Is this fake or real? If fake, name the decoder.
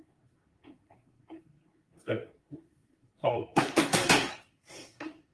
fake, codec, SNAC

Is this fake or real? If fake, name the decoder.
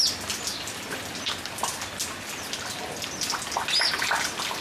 real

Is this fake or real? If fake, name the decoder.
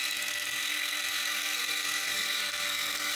fake, codec, SNAC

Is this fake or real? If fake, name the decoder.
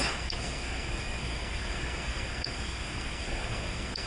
fake, codec, SNAC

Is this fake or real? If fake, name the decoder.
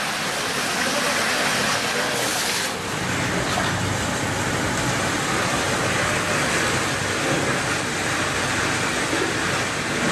real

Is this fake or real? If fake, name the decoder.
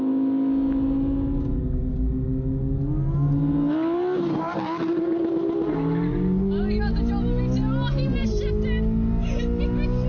real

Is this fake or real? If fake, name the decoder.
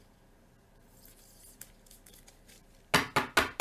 real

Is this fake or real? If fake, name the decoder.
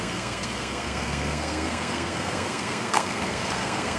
fake, codec, SNAC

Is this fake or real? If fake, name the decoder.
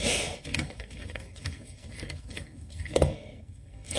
fake, codec, SNAC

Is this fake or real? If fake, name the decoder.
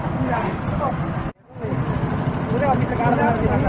real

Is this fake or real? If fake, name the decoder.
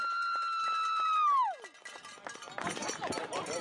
real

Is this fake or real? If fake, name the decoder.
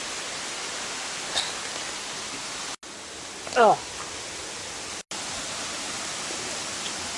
real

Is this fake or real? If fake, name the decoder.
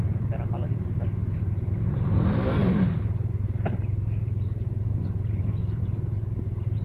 real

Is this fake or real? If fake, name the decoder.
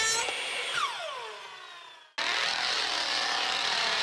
real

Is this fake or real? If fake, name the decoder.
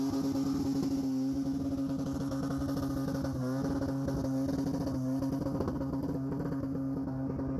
real